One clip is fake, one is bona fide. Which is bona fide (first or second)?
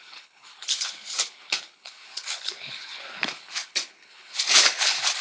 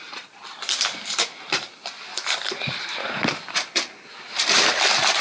second